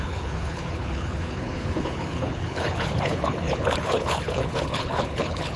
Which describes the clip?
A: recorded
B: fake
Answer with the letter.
B